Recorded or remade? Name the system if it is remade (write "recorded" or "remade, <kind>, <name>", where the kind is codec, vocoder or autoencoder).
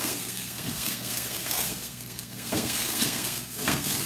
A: remade, codec, SNAC